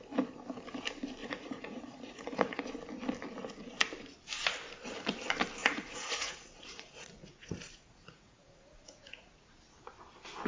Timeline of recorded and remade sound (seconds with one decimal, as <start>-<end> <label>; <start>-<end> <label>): 0.0-1.2 recorded; 1.2-2.6 remade; 2.6-5.6 recorded; 5.6-9.5 remade; 9.5-10.5 recorded